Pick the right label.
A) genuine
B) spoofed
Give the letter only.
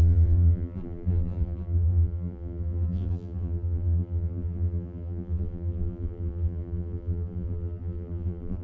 B